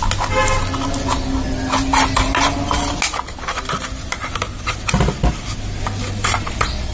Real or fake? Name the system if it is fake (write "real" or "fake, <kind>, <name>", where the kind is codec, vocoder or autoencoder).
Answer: real